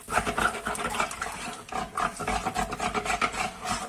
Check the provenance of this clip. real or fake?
real